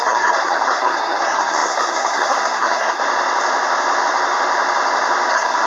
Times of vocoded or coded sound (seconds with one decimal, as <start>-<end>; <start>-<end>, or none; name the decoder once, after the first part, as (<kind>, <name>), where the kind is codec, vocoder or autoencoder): 0.0-3.0 (codec, SNAC); 5.3-5.7